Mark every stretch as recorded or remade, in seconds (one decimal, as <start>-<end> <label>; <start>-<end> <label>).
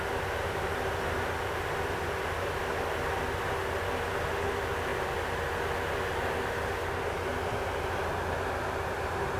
0.0-9.4 recorded